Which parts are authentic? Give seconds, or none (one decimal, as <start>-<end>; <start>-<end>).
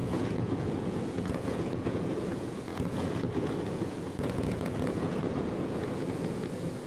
none